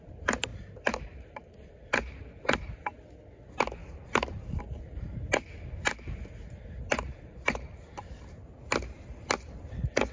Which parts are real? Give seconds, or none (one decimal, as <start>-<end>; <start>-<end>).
0.0-0.5; 1.5-3.8; 4.6-10.1